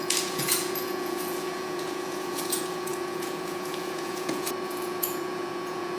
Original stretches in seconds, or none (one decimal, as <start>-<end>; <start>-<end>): none